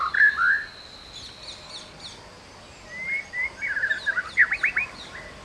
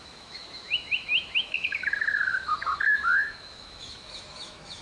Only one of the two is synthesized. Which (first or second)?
second